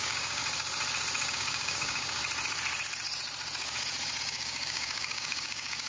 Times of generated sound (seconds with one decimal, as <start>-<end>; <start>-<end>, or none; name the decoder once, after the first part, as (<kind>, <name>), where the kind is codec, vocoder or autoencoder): 0.0-0.4 (codec, DAC); 1.3-2.2; 4.2-5.9